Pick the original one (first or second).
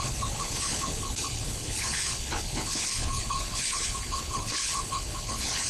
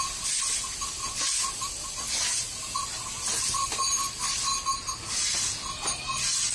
second